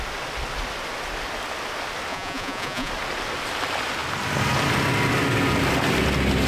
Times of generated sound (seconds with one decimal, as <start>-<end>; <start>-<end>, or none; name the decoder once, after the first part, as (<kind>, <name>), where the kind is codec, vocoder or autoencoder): 2.1-2.9 (vocoder, Vocos)